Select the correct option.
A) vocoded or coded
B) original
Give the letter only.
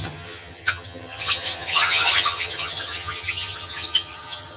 A